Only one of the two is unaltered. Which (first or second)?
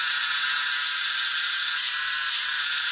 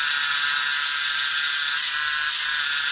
second